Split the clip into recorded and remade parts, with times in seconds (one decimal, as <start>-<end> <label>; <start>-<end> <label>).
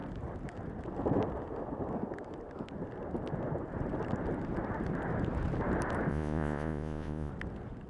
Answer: 0.0-6.1 recorded; 6.1-7.3 remade; 7.3-7.9 recorded